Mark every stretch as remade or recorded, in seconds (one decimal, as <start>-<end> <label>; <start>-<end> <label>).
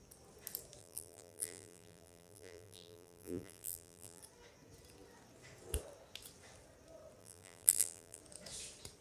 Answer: 0.0-0.8 recorded; 0.8-4.2 remade; 4.2-7.2 recorded; 7.2-8.2 remade; 8.2-9.0 recorded